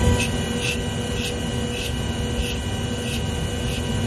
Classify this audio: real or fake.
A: real